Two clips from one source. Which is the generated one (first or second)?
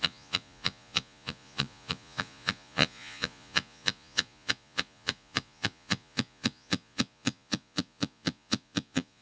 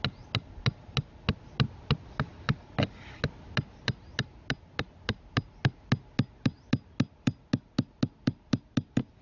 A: first